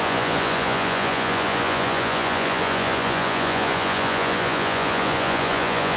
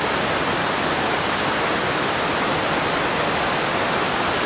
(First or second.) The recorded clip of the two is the second